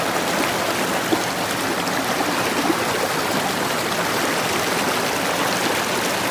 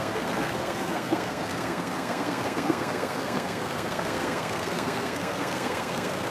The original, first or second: first